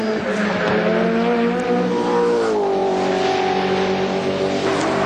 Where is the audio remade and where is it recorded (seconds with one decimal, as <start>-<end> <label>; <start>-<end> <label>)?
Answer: 0.0-5.1 recorded